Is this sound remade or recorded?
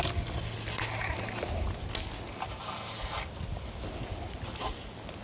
recorded